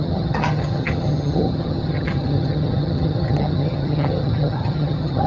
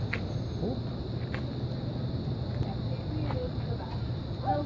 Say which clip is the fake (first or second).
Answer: first